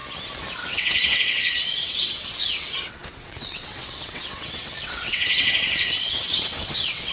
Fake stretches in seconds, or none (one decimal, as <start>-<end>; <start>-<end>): 0.6-7.1